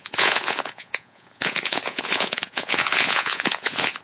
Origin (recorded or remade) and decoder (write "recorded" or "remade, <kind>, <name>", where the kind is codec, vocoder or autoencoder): remade, vocoder, Vocos